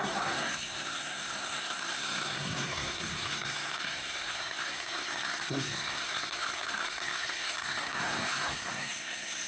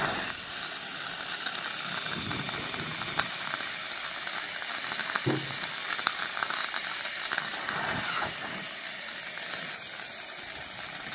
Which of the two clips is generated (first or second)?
first